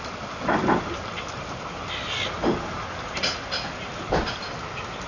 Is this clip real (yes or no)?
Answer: yes